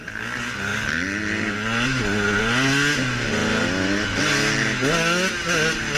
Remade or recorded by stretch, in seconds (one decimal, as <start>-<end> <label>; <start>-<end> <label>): 0.0-6.0 recorded